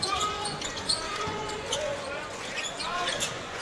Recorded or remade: remade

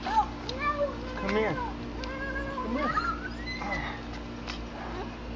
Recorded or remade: recorded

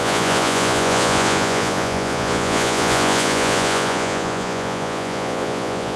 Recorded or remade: remade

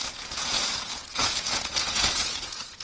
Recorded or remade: remade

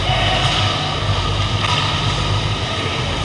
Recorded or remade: recorded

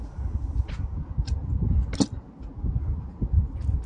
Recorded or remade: recorded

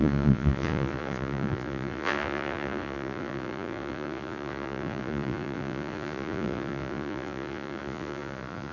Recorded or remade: remade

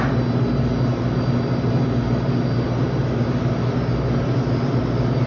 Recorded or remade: recorded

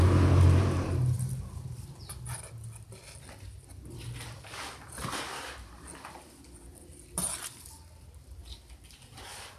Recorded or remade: recorded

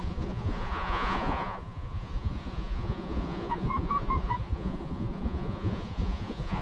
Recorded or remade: remade